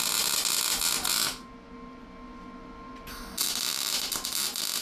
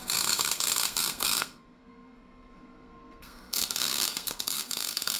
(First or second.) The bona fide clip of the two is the first